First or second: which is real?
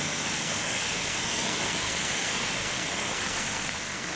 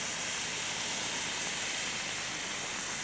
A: second